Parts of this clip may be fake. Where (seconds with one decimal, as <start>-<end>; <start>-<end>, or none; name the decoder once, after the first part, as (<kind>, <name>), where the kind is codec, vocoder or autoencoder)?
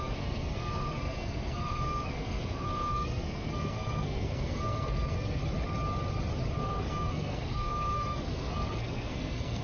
0.0-5.4 (codec, SNAC); 6.6-9.6